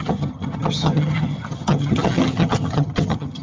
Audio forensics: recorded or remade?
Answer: remade